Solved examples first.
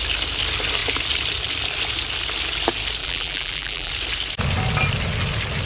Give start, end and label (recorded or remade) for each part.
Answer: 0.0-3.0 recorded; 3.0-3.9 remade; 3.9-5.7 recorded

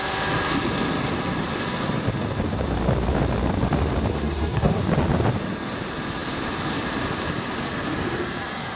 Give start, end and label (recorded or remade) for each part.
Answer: 0.0-4.1 recorded; 4.1-4.8 remade; 4.8-8.8 recorded

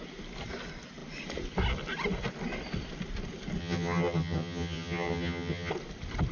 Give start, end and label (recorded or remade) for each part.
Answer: 0.0-3.6 recorded; 3.6-5.7 remade; 5.7-6.3 recorded

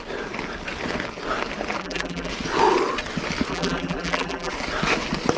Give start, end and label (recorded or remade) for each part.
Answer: 0.0-1.8 recorded; 1.8-2.3 remade; 2.3-3.5 recorded; 3.5-4.5 remade; 4.5-5.4 recorded